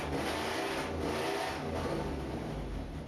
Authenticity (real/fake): real